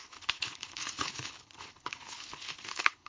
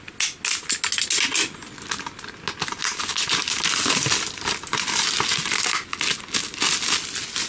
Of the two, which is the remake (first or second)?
first